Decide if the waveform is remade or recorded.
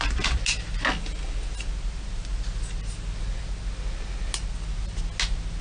recorded